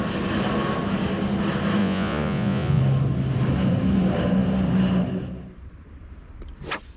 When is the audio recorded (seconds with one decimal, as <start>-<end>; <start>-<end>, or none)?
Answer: 0.0-1.8; 2.8-7.0